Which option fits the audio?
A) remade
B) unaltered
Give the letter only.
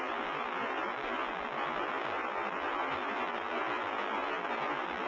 A